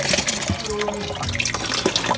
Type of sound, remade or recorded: recorded